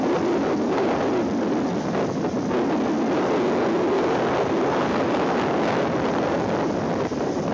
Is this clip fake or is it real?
real